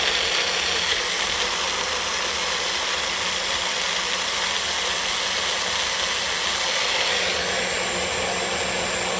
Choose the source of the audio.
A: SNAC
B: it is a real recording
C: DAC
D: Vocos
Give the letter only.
B